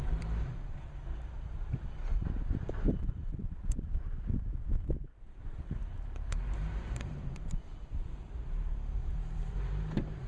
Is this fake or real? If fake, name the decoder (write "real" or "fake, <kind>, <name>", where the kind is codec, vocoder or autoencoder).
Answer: fake, vocoder, BigVGAN v2